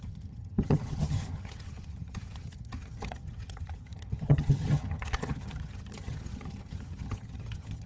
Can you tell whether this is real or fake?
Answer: fake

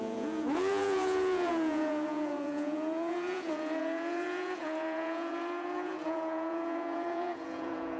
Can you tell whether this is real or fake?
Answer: fake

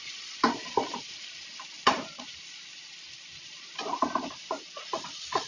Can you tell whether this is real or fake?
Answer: fake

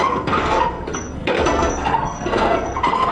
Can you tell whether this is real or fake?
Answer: fake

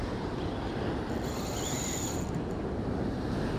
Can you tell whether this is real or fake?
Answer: real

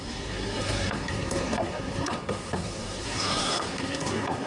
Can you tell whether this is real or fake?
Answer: fake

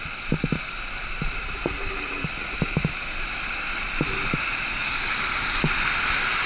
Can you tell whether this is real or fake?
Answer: real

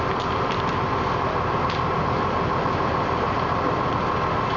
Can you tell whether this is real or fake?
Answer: real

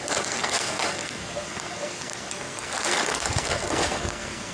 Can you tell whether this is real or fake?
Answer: fake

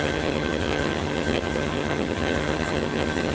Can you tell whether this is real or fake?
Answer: fake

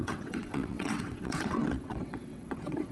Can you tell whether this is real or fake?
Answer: fake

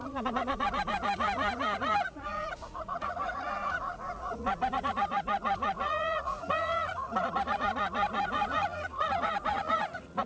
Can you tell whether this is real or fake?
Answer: fake